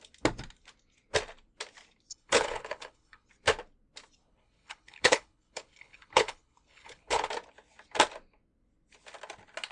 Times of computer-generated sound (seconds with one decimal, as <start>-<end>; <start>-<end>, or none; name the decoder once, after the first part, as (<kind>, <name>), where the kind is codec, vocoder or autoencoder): 2.1-3.3 (codec, HILCodec); 4.2-7.3